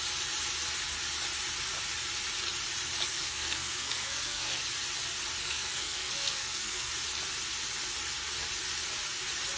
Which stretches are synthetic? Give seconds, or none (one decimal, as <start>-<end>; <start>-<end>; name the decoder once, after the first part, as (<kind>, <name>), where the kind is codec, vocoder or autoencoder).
3.1-4.6 (codec, SNAC); 5.4-6.9